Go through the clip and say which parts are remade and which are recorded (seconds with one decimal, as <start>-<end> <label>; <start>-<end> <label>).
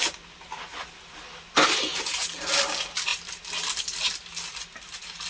0.0-5.3 recorded